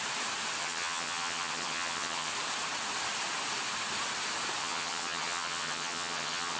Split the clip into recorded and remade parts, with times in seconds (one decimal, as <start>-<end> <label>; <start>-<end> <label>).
0.0-0.6 recorded; 0.6-2.3 remade; 2.3-4.6 recorded; 4.6-6.6 remade